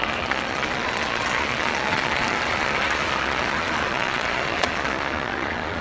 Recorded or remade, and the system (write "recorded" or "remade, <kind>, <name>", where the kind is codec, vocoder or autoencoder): remade, vocoder, Vocos